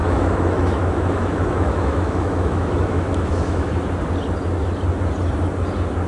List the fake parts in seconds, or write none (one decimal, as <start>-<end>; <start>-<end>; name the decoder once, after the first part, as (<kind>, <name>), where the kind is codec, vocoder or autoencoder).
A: 0.0-3.7 (autoencoder, DAC-VAE)